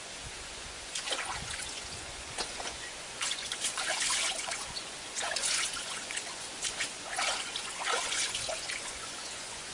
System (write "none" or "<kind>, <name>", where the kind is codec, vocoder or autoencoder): vocoder, Vocos